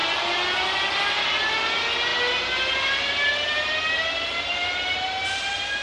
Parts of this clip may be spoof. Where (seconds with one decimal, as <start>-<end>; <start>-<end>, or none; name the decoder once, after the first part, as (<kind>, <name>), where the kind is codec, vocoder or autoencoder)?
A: none